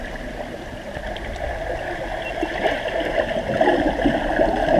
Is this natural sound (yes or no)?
yes